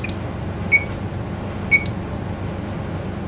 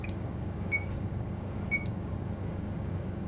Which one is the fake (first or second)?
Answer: second